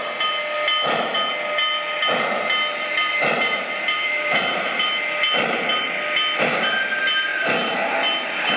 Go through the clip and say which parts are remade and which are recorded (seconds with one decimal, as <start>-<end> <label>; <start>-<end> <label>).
0.0-2.7 recorded; 2.7-5.6 remade; 5.6-7.3 recorded; 7.3-8.6 remade